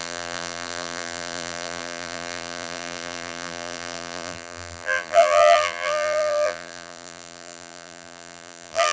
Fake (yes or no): yes